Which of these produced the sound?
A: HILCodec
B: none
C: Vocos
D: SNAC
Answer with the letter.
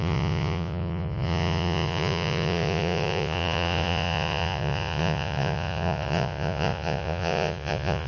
C